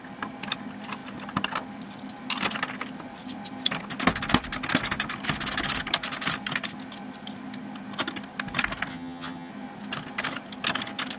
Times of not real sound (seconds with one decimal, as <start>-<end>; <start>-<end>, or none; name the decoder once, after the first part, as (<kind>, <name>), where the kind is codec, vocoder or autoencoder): 8.9-9.5 (vocoder, HiFi-GAN)